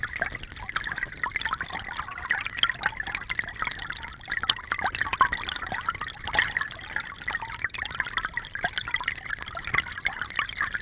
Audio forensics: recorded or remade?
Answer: recorded